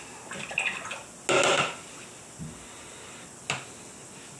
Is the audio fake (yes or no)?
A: no